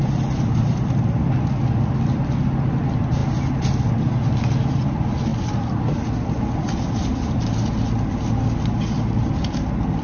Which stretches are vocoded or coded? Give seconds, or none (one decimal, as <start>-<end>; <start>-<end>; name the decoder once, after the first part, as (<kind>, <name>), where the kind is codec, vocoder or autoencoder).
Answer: none